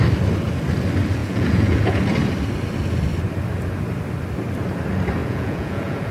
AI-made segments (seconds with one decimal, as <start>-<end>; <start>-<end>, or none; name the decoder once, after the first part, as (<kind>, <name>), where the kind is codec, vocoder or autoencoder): 1.2-2.0 (vocoder, Vocos); 5.2-6.1